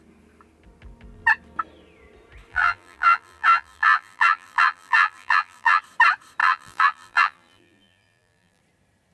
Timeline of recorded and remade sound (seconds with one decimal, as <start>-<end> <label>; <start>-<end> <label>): 0.0-2.5 recorded; 2.5-5.8 remade; 5.8-6.4 recorded; 6.4-8.6 remade; 8.6-9.1 recorded